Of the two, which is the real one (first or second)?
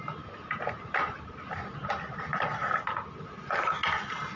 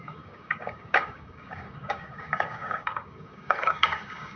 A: first